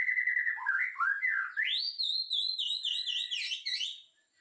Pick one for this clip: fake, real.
real